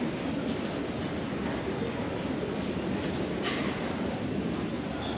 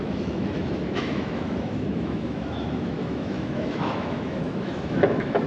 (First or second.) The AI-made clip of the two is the second